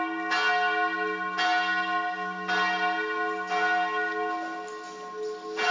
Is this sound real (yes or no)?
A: yes